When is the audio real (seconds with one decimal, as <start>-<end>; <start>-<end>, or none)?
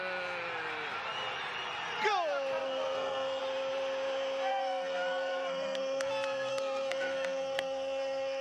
0.0-2.6; 3.4-4.5; 6.1-6.5